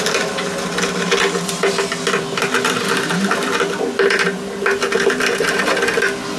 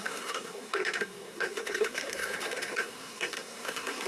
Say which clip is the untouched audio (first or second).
first